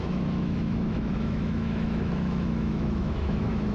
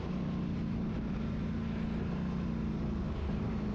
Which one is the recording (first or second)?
second